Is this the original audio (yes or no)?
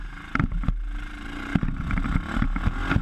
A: yes